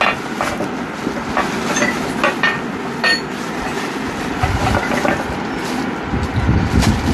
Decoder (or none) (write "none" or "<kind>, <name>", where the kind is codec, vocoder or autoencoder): none